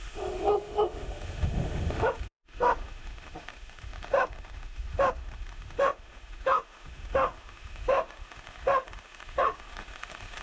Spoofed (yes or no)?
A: yes